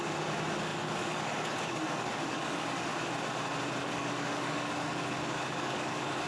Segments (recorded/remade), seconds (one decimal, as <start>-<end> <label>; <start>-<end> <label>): 0.0-2.9 remade; 2.9-3.8 recorded; 3.8-6.3 remade